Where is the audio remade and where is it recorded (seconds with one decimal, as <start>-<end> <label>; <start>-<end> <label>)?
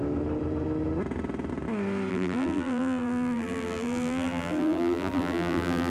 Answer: 0.0-2.1 recorded; 2.1-5.9 remade